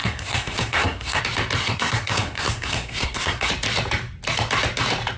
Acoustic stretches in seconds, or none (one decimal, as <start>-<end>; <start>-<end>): 1.2-1.6; 3.5-5.2